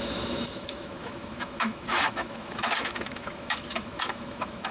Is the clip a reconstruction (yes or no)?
yes